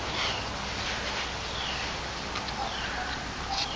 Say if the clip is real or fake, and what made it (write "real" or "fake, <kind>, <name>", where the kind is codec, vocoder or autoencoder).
real